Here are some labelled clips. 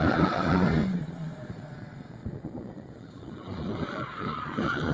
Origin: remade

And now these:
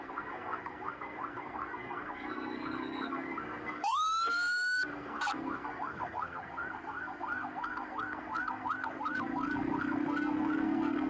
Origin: remade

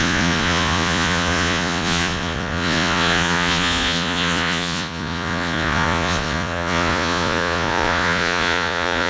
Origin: remade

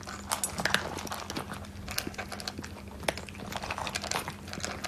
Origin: recorded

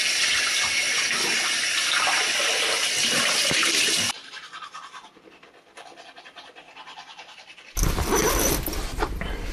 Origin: remade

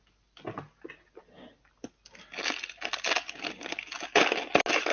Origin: recorded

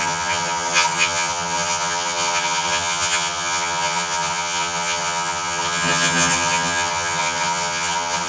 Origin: remade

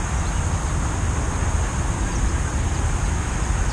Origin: recorded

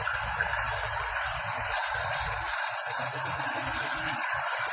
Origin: recorded